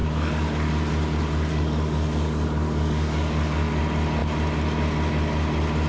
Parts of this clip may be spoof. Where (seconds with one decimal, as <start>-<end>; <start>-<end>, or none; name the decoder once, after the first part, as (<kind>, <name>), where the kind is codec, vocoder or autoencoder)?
0.0-0.7 (codec, DAC); 1.5-3.8